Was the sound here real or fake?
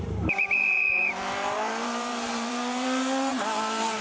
fake